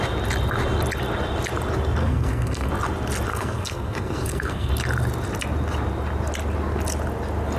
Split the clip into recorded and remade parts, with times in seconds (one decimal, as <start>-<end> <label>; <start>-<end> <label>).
0.0-2.0 recorded; 2.0-2.7 remade; 2.7-3.3 recorded; 3.3-4.7 remade; 4.7-7.6 recorded